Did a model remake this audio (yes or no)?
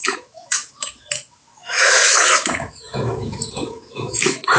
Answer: yes